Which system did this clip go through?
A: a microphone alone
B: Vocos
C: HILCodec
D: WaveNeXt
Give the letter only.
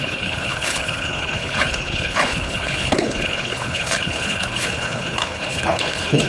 C